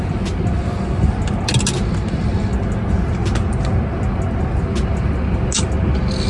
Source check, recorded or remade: recorded